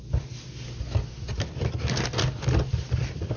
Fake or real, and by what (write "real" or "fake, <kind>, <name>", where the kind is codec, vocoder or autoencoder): real